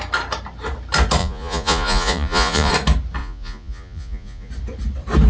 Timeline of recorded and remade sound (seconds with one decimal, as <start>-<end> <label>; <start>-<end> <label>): 0.0-1.2 recorded; 1.2-2.7 remade; 2.7-3.2 recorded; 3.2-4.5 remade; 4.5-5.3 recorded